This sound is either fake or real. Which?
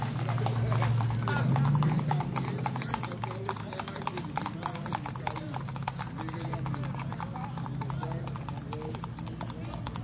real